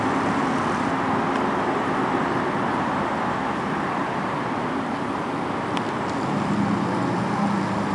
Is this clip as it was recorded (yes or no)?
yes